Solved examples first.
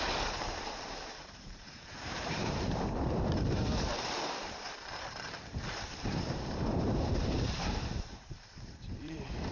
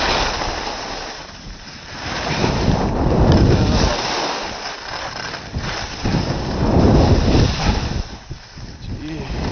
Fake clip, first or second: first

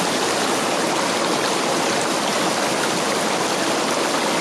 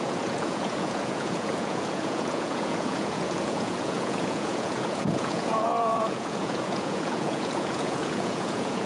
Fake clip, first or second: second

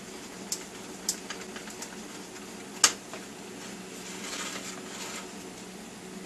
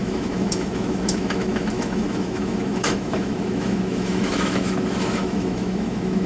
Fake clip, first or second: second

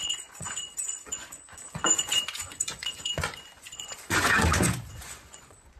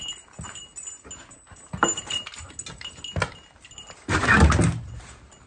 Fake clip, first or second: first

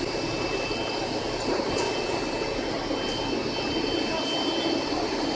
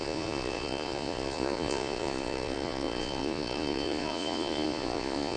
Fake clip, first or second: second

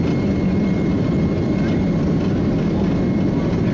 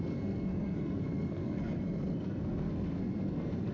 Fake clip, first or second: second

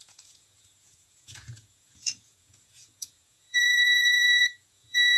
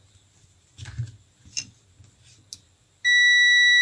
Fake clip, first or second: first